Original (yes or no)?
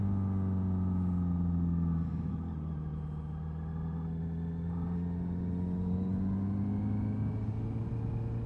yes